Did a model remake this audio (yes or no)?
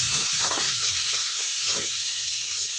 yes